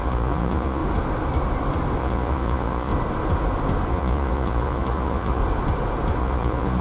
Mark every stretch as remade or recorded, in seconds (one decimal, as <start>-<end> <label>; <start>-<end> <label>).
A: 0.0-0.8 remade; 0.8-2.0 recorded; 2.0-2.9 remade; 2.9-3.9 recorded; 3.9-5.4 remade; 5.4-6.2 recorded; 6.2-6.8 remade